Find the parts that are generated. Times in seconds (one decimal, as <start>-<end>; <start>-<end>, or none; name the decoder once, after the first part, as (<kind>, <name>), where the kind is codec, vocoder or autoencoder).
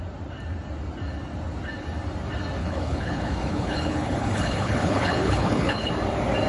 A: 2.6-5.9 (codec, HILCodec)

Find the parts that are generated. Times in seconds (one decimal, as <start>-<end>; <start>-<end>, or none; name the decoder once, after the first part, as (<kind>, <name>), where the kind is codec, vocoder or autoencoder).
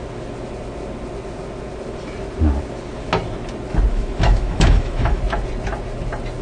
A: 3.9-5.2 (autoencoder, DAC-VAE)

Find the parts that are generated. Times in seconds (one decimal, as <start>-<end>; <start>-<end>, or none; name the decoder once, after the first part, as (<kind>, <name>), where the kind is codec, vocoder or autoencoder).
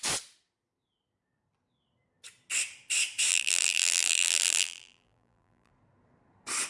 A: 3.3-5.7 (vocoder, BigVGAN v2)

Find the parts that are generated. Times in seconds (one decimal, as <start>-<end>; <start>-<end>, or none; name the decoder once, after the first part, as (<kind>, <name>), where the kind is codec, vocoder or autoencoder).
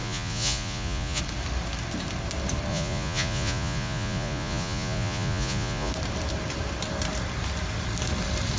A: 0.0-1.2 (vocoder, Vocos); 2.7-5.9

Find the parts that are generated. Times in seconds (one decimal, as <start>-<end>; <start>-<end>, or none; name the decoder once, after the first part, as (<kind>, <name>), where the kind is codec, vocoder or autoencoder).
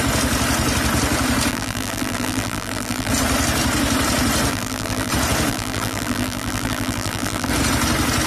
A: 1.5-3.1 (vocoder, BigVGAN v2); 4.5-5.1; 5.5-7.5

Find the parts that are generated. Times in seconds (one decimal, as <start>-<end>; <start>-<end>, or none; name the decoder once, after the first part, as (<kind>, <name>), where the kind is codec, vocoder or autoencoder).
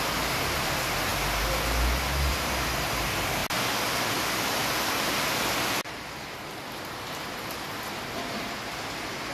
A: none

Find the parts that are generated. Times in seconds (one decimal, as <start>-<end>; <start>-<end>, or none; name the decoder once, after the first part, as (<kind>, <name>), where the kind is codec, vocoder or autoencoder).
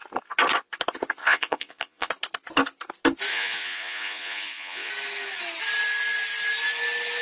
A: 1.2-2.1 (vocoder, Vocos); 3.3-4.9